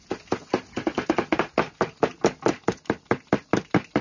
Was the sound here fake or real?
real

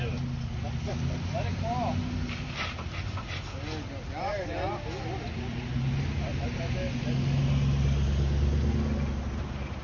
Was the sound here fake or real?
real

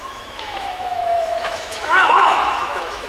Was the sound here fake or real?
fake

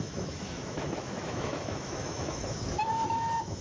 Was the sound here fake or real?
fake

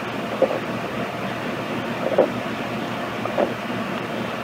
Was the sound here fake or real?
real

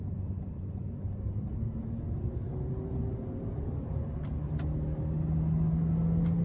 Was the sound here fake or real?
real